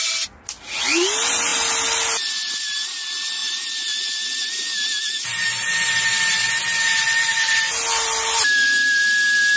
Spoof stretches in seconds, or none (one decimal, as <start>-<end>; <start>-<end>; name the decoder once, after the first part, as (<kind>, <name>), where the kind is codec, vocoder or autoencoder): none